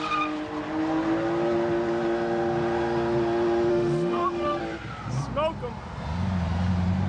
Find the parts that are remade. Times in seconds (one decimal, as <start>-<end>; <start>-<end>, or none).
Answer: 3.7-4.6